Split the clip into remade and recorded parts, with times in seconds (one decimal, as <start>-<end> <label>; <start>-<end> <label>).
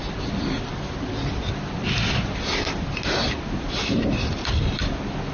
0.0-5.3 recorded